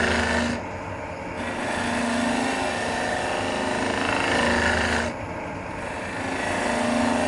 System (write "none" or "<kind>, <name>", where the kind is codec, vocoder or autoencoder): none